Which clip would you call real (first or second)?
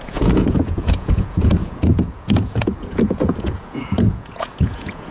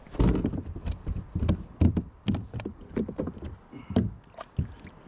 second